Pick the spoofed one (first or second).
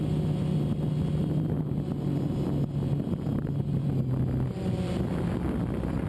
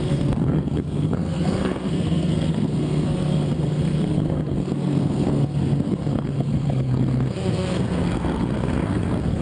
second